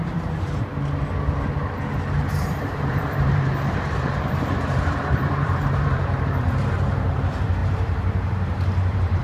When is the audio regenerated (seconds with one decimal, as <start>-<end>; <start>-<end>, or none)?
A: 0.0-0.7; 2.2-9.2